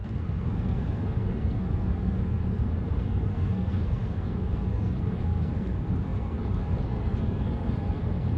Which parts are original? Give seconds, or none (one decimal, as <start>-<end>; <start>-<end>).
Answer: none